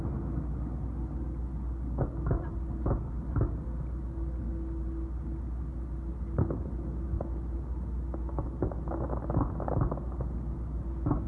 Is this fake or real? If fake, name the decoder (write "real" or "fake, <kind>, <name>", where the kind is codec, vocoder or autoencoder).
real